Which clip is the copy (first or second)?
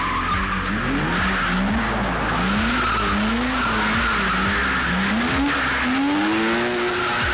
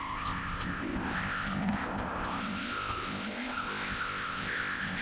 second